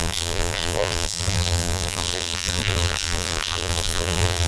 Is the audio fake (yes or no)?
yes